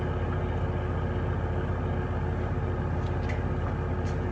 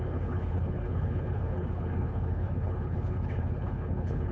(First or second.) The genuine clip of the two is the first